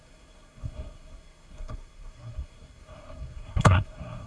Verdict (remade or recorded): remade